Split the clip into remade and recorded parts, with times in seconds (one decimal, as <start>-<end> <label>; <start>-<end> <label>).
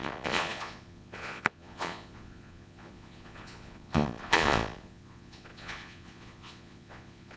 0.0-7.4 remade